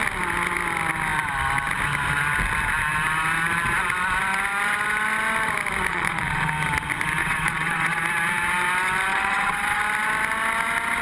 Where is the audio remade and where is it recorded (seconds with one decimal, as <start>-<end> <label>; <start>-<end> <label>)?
0.0-5.9 recorded; 5.9-6.5 remade; 6.5-7.2 recorded; 7.2-8.0 remade; 8.0-9.1 recorded; 9.1-9.8 remade; 9.8-11.0 recorded